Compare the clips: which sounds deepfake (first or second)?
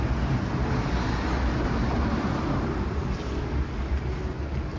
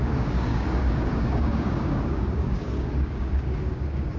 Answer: second